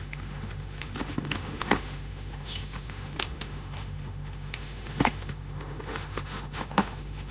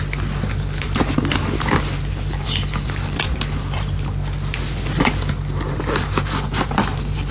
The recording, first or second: second